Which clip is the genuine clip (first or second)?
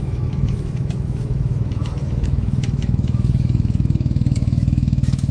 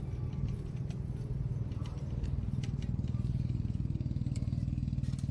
second